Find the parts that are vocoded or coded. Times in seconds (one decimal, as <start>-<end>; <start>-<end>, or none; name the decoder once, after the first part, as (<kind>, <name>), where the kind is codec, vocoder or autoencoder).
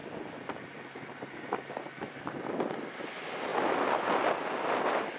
0.0-2.9 (vocoder, BigVGAN v2); 3.5-4.1